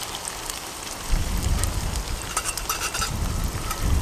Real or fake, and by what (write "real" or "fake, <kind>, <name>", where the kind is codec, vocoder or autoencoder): real